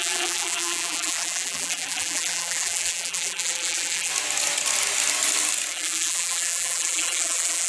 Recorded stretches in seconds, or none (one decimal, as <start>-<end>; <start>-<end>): 4.1-5.7